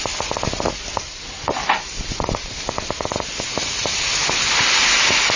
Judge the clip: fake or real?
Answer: real